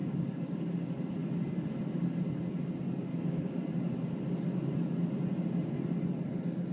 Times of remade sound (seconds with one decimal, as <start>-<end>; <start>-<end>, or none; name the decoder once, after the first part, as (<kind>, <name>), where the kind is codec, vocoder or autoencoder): 0.0-0.7 (codec, DAC); 3.1-3.7

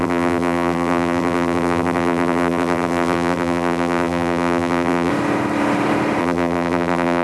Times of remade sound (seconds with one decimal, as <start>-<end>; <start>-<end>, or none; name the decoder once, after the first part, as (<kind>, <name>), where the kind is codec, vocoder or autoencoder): 0.0-5.1 (vocoder, BigVGAN v2); 6.2-7.2

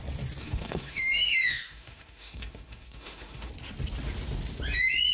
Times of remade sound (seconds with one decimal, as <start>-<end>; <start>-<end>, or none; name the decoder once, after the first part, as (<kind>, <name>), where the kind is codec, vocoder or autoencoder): 0.4-3.5 (autoencoder, DAC-VAE)

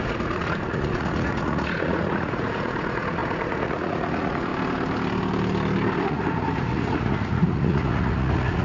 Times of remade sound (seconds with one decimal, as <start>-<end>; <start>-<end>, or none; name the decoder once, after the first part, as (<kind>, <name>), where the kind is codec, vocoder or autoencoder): 0.0-4.5 (vocoder, Vocos); 6.0-8.6

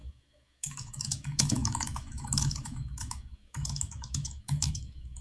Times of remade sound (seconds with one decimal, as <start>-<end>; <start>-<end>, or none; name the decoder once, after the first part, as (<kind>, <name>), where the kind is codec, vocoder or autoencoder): 0.0-5.2 (autoencoder, DAC-VAE)

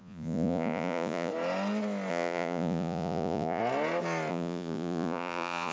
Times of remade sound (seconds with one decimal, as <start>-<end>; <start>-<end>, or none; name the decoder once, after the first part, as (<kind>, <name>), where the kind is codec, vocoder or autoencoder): 0.0-1.3 (vocoder, Vocos); 2.1-3.6; 4.3-5.7

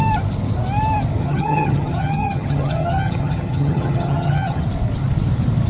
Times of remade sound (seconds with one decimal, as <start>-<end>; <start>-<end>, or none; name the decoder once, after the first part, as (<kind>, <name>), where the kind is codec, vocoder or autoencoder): 1.2-4.6 (vocoder, HiFi-GAN)